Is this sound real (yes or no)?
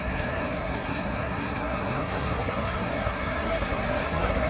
no